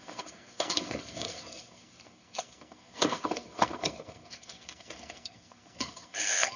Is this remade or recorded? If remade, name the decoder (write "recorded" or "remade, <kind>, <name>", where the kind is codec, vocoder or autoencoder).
remade, codec, SNAC